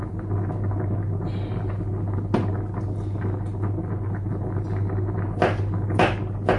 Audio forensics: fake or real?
real